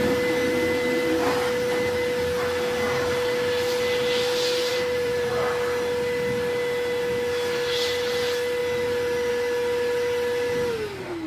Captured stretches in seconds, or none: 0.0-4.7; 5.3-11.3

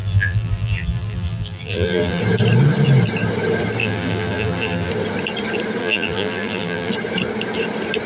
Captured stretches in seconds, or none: 2.2-3.8; 4.9-5.8; 6.9-8.1

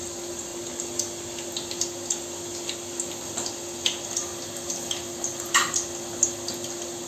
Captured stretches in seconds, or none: 0.5-2.2; 4.3-7.1

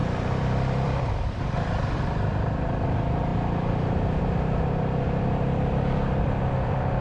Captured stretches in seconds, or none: 3.3-4.2

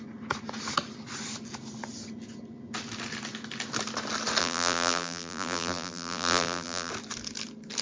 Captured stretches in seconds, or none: 0.0-4.4; 6.9-7.8

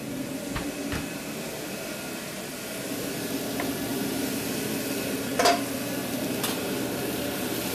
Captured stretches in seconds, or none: 0.0-3.9; 4.6-7.7

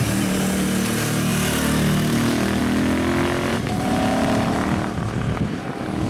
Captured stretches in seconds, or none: 0.0-3.5; 4.4-6.1